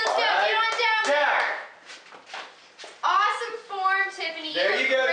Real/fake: real